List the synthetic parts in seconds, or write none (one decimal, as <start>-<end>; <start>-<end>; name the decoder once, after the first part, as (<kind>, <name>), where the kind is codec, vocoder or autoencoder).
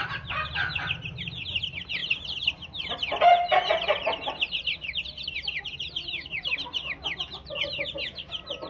2.0-6.5 (vocoder, BigVGAN v2)